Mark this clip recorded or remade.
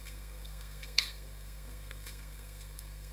remade